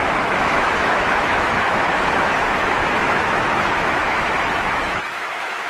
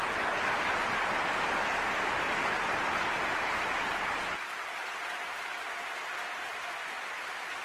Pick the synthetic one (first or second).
first